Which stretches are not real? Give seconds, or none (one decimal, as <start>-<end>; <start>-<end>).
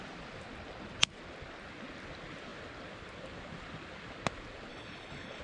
4.7-5.4